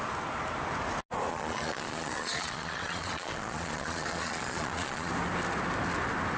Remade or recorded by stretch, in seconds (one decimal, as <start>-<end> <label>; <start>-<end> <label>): 0.0-1.3 recorded; 1.3-5.1 remade; 5.1-6.4 recorded